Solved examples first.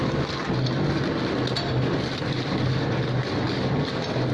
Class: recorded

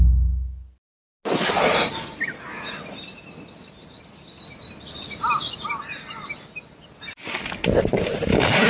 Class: recorded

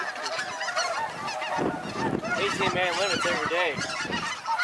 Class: recorded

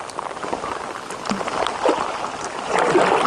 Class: recorded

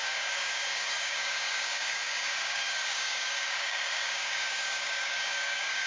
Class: remade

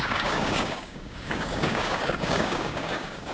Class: remade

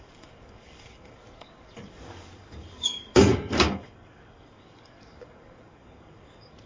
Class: remade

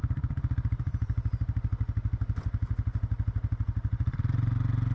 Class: remade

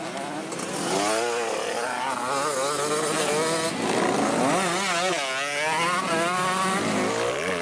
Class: recorded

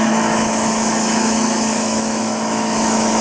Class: remade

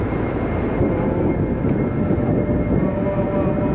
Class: recorded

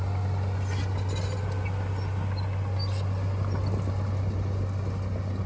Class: recorded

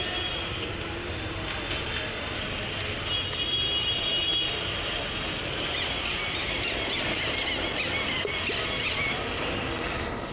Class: recorded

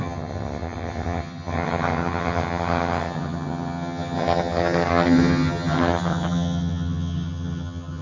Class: remade